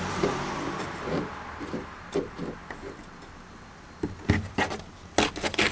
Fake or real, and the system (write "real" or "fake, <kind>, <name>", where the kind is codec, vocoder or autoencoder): real